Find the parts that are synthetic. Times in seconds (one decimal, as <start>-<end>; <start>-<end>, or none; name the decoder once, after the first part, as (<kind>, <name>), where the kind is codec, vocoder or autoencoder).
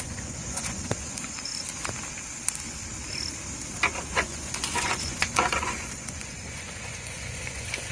0.0-1.5 (vocoder, Vocos); 4.1-7.9